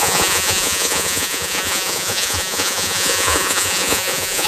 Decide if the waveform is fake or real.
fake